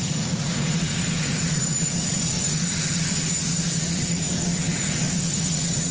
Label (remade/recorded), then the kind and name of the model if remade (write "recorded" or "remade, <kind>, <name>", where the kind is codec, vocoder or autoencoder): remade, vocoder, Vocos